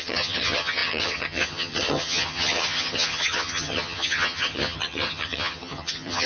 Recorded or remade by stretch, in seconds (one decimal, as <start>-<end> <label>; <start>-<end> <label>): 0.0-6.3 remade